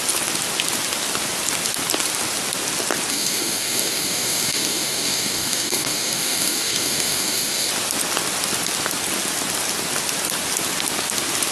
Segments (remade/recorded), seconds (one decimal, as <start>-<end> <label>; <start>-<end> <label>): 0.0-3.1 recorded; 3.1-7.7 remade; 7.7-11.5 recorded